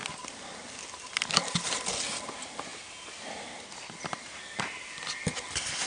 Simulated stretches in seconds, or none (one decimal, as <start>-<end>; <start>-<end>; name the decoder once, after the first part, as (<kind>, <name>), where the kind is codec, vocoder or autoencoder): none